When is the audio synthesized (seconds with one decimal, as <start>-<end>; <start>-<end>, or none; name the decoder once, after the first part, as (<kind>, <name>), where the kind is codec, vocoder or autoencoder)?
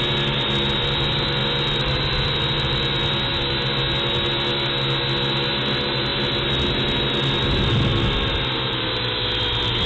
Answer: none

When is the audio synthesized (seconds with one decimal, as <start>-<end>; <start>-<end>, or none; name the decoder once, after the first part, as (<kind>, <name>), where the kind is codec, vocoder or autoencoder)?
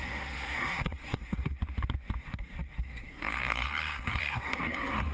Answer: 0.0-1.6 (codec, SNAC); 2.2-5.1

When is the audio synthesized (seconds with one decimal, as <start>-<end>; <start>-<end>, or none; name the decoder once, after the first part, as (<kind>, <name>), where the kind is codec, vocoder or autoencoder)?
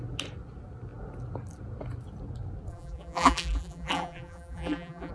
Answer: 2.7-5.1 (vocoder, BigVGAN v2)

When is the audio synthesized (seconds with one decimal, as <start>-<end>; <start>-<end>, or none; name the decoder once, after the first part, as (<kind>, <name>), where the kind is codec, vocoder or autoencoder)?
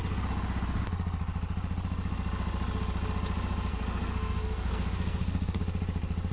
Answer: 3.7-5.6 (codec, SNAC)